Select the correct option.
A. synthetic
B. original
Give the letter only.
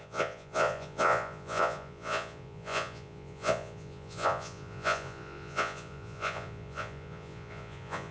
A